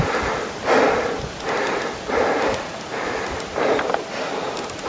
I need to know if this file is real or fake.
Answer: real